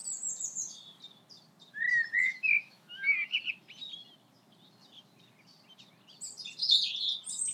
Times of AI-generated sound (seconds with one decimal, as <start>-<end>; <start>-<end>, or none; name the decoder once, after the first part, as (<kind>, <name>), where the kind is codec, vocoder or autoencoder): 2.2-3.4 (autoencoder, DAC-VAE)